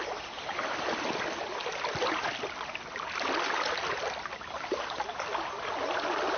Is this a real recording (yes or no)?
yes